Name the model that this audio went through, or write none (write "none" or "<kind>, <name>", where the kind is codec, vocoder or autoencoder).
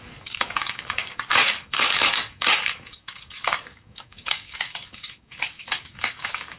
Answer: codec, DAC